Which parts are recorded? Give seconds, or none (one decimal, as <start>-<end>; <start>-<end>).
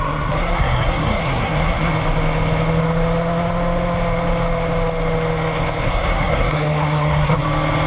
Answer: 1.9-5.9; 7.3-7.9